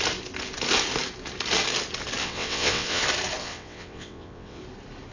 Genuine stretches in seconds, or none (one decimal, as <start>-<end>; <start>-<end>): 0.0-2.2; 3.0-3.4; 4.6-5.1